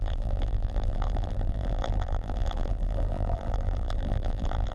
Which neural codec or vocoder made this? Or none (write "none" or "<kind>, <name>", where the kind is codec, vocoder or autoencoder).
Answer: vocoder, BigVGAN v2